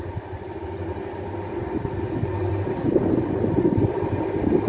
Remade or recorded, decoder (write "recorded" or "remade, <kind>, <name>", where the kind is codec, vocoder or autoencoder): remade, vocoder, BigVGAN v2